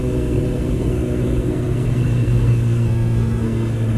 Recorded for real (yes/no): no